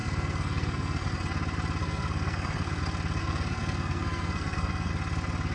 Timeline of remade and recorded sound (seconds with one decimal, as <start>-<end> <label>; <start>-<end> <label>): 0.0-1.1 remade; 1.1-1.8 recorded; 1.8-2.8 remade; 2.8-3.2 recorded; 3.2-4.9 remade; 4.9-5.5 recorded